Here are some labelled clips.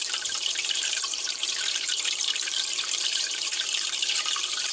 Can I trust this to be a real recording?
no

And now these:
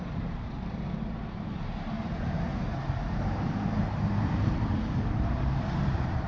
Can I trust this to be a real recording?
no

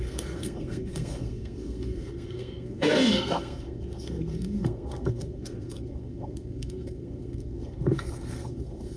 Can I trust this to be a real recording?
no